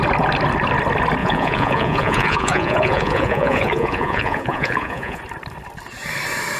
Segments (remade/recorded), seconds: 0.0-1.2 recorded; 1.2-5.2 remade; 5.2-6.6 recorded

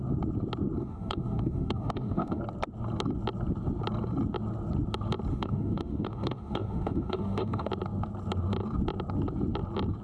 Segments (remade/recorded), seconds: 0.0-0.8 recorded; 0.8-2.4 remade; 2.4-5.3 recorded; 5.3-7.7 remade; 7.7-10.0 recorded

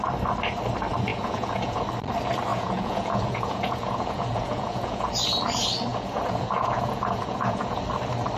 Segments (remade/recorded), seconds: 0.0-1.1 recorded; 1.1-1.8 remade; 1.8-2.5 recorded; 2.5-5.1 remade; 5.1-5.9 recorded; 5.9-7.8 remade; 7.8-8.4 recorded